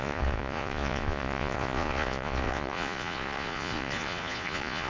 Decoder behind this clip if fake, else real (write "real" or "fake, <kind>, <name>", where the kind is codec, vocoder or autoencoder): fake, vocoder, Vocos